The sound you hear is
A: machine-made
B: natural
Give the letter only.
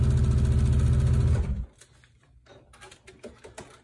B